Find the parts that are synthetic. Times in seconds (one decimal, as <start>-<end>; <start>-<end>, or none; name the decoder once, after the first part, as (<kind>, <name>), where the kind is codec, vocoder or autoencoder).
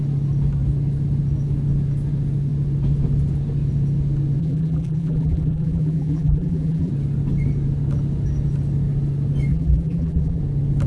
4.4-6.9 (vocoder, BigVGAN v2); 9.5-10.4